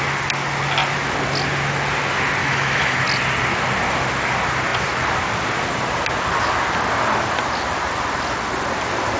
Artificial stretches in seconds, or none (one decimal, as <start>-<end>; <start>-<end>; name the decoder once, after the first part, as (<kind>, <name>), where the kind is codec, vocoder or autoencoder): 2.4-3.0 (autoencoder, DAC-VAE)